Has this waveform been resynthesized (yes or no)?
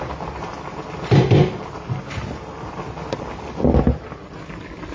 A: no